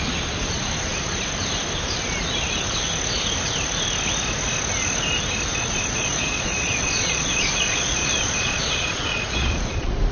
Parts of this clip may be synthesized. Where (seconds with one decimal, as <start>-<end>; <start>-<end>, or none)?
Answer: 5.5-10.1